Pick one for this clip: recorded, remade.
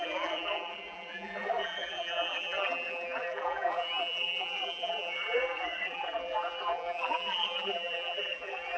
remade